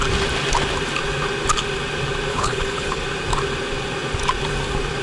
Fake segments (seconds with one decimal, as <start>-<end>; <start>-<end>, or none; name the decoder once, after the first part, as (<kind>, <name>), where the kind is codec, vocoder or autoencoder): 2.3-3.0 (codec, HILCodec)